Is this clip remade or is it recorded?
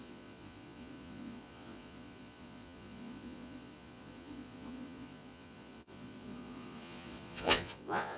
remade